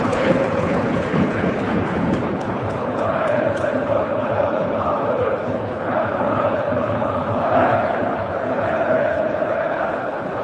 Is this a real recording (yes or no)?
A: no